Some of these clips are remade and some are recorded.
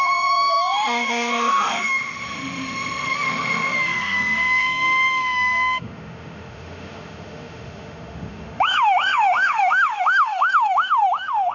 remade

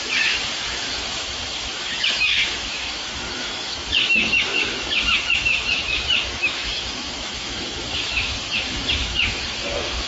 remade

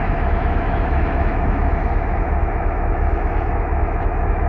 remade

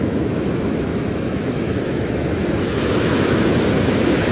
remade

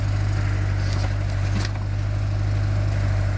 recorded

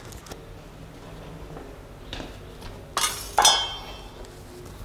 recorded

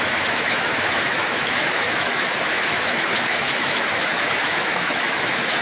remade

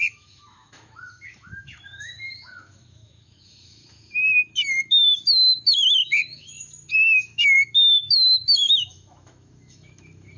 remade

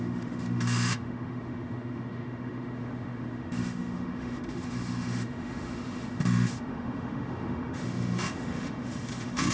remade